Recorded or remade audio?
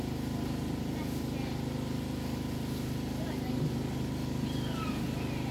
recorded